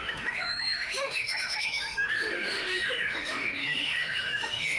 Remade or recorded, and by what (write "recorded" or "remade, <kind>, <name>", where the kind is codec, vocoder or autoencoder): remade, autoencoder, DAC-VAE